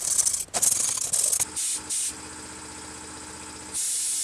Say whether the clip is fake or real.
real